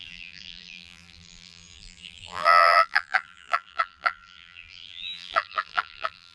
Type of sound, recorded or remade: remade